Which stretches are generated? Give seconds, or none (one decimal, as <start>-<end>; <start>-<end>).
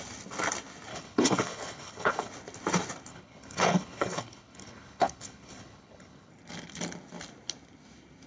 0.9-2.3; 3.1-6.3